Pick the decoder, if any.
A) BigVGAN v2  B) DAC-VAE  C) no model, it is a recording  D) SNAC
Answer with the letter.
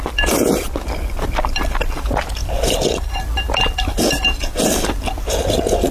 C